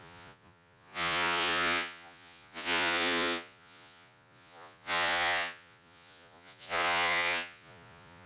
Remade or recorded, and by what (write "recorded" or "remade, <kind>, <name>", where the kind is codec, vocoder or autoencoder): remade, vocoder, Vocos